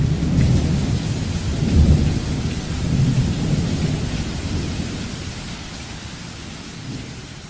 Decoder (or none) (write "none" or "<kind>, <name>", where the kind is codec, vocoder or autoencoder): none